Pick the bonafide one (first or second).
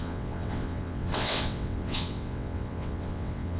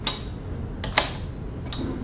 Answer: second